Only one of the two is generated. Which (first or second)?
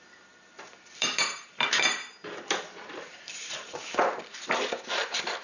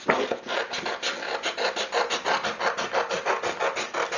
first